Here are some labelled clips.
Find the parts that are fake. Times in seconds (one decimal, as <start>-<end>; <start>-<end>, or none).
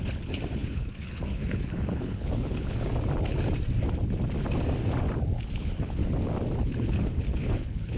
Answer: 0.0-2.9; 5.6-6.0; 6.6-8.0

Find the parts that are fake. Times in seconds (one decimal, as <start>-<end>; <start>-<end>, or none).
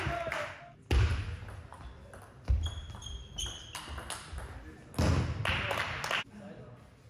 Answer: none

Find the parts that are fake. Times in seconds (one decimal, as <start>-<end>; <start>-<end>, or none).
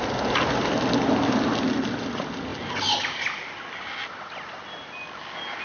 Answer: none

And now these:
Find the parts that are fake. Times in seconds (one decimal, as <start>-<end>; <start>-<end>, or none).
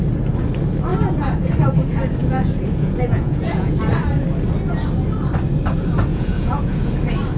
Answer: 0.9-1.5; 2.2-3.7; 6.1-6.9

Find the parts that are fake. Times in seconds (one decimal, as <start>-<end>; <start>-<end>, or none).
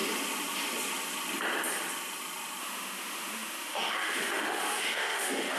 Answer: 2.6-5.6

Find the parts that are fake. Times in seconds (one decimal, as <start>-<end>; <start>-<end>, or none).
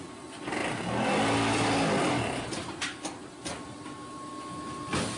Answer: none